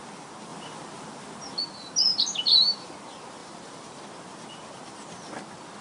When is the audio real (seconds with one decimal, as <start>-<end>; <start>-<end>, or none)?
0.0-2.1; 2.9-3.4; 4.0-5.8